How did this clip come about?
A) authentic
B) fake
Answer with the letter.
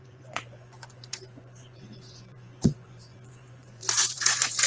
B